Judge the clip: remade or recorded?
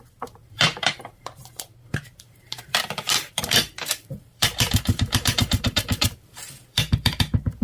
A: remade